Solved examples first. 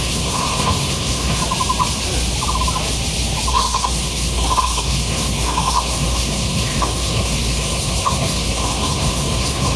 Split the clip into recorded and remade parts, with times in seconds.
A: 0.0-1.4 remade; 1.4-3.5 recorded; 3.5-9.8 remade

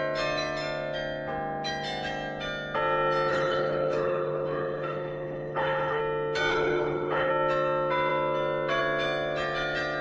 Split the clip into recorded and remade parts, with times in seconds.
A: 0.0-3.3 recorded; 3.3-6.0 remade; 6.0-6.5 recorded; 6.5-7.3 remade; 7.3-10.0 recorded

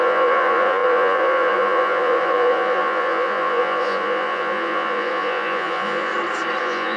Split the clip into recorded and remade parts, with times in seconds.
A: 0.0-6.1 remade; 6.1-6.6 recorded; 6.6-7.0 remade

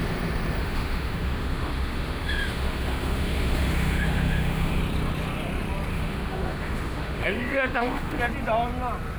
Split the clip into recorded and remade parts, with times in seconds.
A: 0.0-0.6 recorded; 0.6-4.8 remade; 4.8-5.9 recorded; 5.9-8.2 remade; 8.2-9.2 recorded

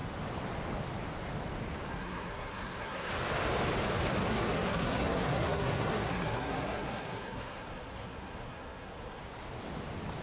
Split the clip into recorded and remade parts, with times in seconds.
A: 0.0-1.9 recorded; 1.9-3.1 remade; 3.1-4.3 recorded; 4.3-9.2 remade; 9.2-10.2 recorded

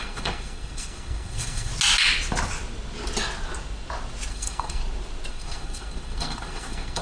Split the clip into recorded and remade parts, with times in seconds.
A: 0.0-1.7 remade; 1.7-4.3 recorded; 4.3-4.8 remade; 4.8-5.3 recorded; 5.3-7.0 remade

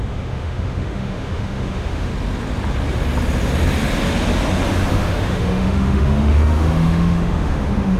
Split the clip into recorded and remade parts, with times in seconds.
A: 0.0-2.1 remade; 2.1-4.9 recorded; 4.9-8.0 remade

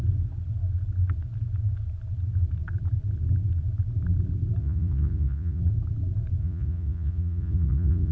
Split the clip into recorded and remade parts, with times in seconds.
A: 0.0-4.6 recorded; 4.6-5.6 remade; 5.6-6.4 recorded; 6.4-8.1 remade